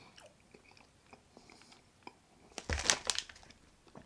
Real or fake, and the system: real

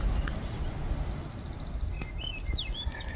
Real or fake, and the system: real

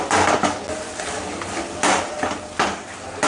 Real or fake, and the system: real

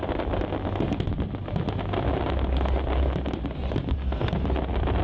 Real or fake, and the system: real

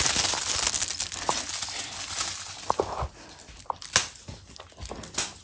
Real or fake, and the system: real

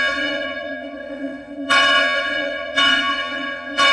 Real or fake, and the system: fake, vocoder, Vocos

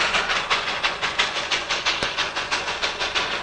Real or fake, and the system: fake, vocoder, Vocos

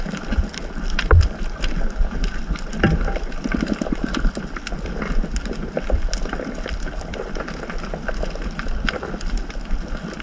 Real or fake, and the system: real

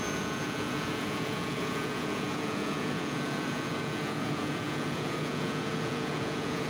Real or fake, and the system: fake, vocoder, Vocos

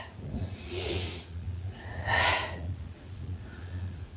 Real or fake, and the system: fake, vocoder, Vocos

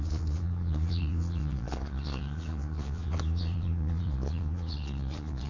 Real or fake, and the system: fake, vocoder, Vocos